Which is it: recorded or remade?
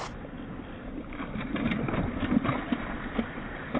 recorded